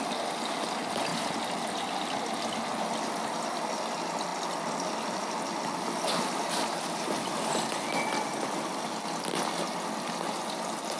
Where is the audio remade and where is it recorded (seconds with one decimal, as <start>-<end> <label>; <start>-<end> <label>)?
0.0-11.0 recorded